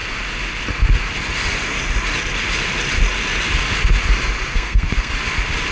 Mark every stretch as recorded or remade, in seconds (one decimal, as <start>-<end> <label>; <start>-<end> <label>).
0.0-4.5 recorded; 4.5-5.1 remade; 5.1-5.7 recorded